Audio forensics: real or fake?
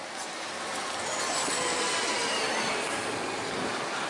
real